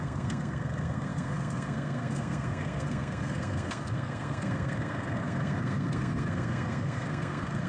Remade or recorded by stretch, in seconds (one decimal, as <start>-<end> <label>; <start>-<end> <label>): 0.0-7.7 remade